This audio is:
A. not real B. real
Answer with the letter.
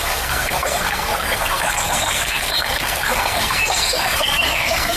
A